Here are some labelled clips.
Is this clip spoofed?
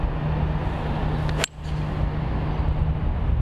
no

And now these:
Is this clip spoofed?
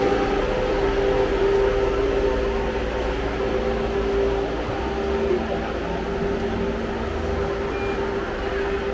no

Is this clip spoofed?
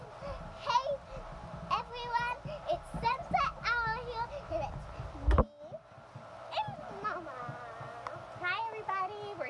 no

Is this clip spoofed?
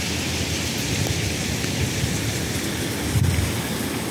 no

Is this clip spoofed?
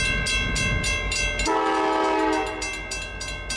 no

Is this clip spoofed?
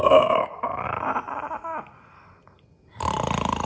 no